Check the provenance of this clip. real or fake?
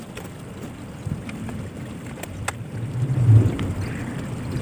fake